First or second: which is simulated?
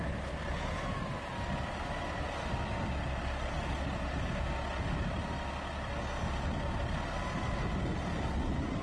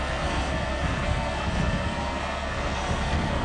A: second